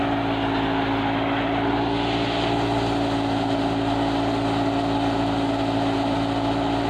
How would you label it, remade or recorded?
recorded